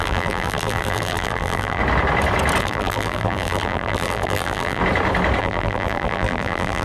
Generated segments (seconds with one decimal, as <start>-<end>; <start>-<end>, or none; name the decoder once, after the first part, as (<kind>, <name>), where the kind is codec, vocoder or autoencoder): 0.0-1.8 (vocoder, BigVGAN v2); 2.6-4.8; 5.4-6.8